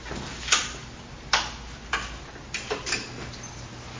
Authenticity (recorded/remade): recorded